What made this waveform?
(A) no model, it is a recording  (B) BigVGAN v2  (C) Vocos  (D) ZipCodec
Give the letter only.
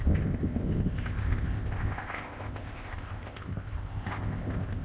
D